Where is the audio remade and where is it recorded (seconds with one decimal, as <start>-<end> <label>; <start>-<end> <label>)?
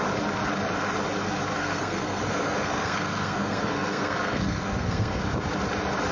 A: 0.0-1.6 recorded; 1.6-5.2 remade; 5.2-6.1 recorded